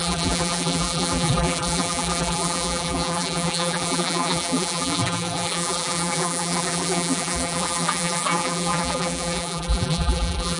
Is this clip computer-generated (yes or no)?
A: yes